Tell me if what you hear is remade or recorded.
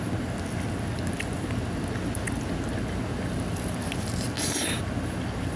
recorded